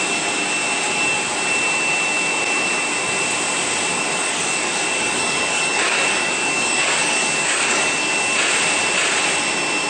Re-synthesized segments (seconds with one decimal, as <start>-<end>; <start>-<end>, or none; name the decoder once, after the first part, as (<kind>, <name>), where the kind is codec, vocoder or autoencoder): 3.9-8.1 (codec, DAC)